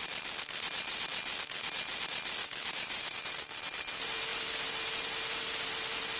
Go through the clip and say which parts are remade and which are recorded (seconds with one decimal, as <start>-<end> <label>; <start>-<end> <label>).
0.0-2.4 recorded; 2.4-3.2 remade; 3.2-6.2 recorded

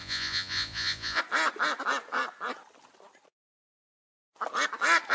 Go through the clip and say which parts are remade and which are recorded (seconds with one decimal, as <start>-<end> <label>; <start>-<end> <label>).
0.0-1.2 remade; 1.2-5.1 recorded

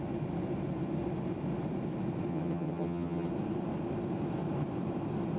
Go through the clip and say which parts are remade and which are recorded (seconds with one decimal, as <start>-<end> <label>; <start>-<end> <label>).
0.0-2.3 recorded; 2.3-3.3 remade; 3.3-5.4 recorded

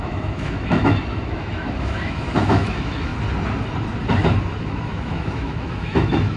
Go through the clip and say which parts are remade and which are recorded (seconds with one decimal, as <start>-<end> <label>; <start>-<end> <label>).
0.0-3.1 remade; 3.1-4.6 recorded; 4.6-6.4 remade

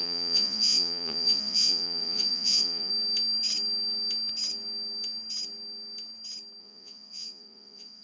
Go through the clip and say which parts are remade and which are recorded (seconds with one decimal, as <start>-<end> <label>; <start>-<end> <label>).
0.0-2.9 remade; 2.9-6.6 recorded; 6.6-8.0 remade